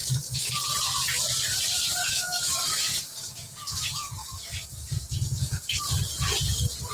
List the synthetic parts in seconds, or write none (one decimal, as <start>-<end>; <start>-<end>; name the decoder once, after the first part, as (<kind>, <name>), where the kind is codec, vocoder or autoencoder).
0.0-0.5 (codec, DAC); 2.0-5.8